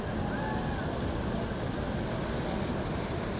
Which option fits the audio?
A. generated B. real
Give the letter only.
B